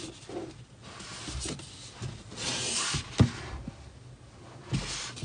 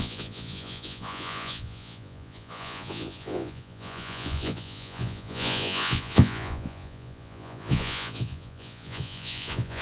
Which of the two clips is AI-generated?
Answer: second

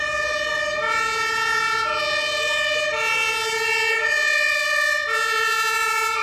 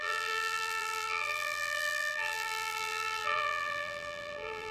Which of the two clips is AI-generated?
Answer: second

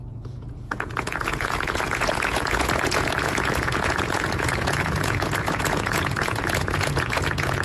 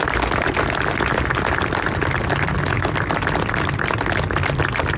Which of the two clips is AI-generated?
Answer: first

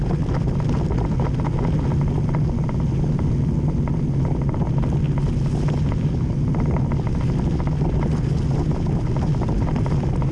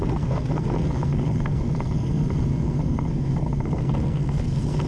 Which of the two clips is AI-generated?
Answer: second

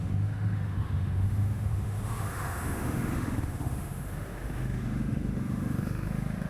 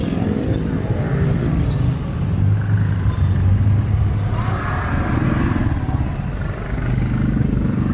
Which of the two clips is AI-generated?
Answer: first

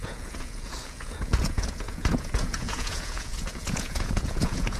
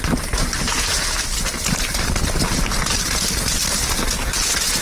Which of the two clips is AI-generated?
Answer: first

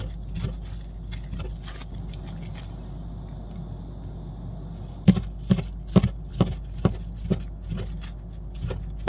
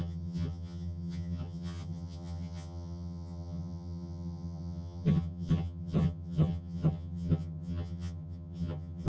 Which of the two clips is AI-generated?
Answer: second